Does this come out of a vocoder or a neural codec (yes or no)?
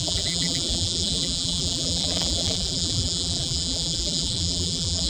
yes